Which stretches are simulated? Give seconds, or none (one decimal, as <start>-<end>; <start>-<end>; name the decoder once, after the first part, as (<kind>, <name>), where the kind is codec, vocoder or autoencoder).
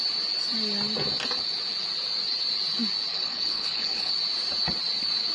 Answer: 3.1-4.1 (codec, HILCodec)